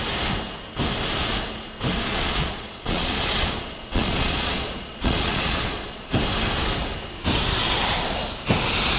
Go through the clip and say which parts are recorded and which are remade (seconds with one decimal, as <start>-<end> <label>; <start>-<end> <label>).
0.0-2.1 recorded; 2.1-6.1 remade; 6.1-9.0 recorded